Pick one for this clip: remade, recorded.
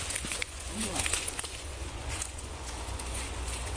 remade